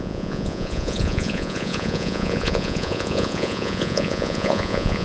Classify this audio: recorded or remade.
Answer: remade